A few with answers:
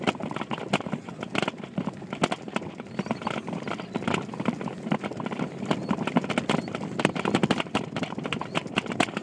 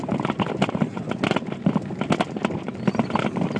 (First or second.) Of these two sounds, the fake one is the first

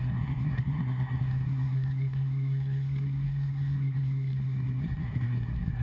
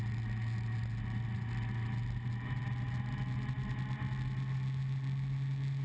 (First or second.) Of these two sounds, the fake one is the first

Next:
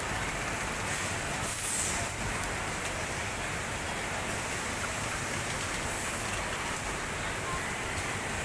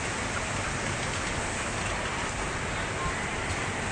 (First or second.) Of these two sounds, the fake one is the first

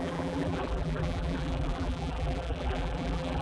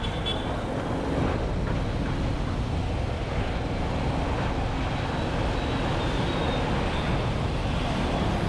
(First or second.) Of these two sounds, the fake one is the first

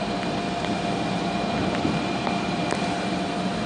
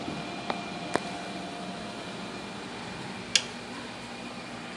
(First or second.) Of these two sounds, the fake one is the first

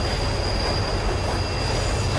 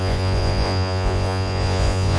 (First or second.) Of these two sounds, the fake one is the second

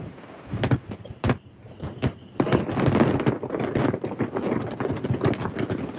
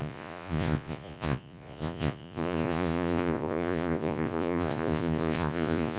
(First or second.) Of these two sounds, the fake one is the second